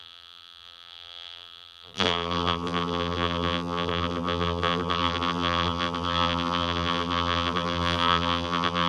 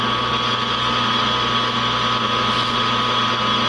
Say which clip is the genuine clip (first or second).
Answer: second